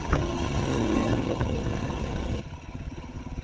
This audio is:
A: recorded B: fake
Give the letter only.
B